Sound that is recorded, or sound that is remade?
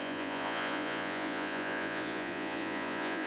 remade